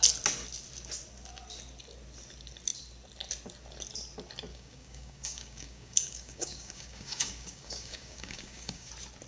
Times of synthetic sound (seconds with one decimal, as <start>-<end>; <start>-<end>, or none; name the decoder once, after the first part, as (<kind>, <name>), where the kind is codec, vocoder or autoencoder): 4.5-8.9 (codec, DAC)